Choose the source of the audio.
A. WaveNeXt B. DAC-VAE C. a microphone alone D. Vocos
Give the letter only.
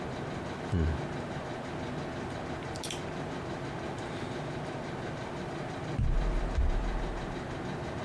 C